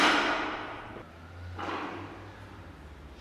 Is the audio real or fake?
real